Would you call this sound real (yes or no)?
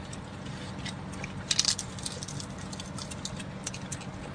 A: yes